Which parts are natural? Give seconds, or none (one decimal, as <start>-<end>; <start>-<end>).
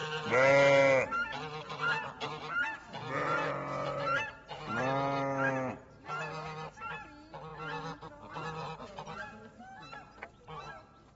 0.0-11.2